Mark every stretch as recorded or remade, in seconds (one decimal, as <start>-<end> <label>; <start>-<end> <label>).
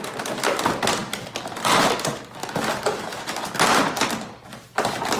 0.0-5.2 recorded